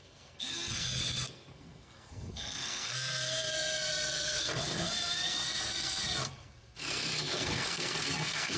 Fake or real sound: fake